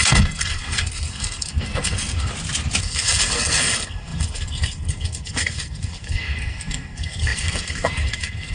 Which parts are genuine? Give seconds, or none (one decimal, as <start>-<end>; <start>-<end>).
2.3-2.8